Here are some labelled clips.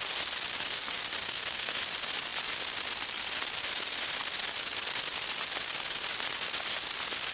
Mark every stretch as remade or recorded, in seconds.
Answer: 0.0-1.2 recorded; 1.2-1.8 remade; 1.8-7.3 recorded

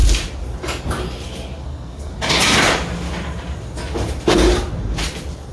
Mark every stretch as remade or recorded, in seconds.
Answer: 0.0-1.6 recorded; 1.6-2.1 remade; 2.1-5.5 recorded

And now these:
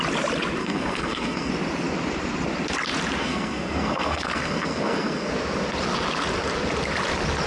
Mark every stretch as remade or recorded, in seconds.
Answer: 0.0-0.6 recorded; 0.6-1.5 remade; 1.5-3.2 recorded; 3.2-5.3 remade; 5.3-7.5 recorded

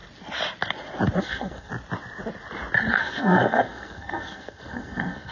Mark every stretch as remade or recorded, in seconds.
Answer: 0.0-1.2 recorded; 1.2-1.7 remade; 1.7-3.0 recorded; 3.0-5.3 remade

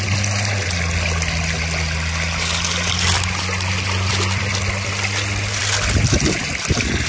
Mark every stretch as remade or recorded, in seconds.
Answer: 0.0-7.1 recorded

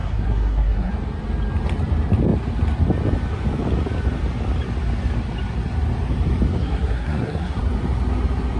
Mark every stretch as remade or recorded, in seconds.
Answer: 0.0-0.9 remade; 0.9-6.6 recorded; 6.6-7.6 remade; 7.6-8.6 recorded